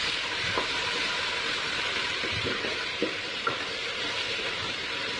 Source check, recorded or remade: remade